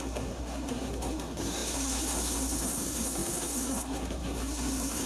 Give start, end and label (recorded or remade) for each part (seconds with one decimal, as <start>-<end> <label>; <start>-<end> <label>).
0.0-5.1 remade